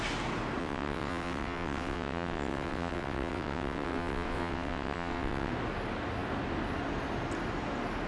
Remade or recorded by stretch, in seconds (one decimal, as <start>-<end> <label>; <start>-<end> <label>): 0.0-0.6 recorded; 0.6-5.5 remade; 5.5-8.1 recorded